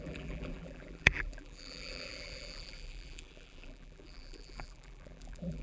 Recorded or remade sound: remade